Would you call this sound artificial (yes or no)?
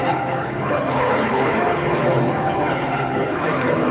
yes